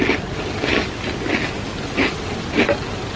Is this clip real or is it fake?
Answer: real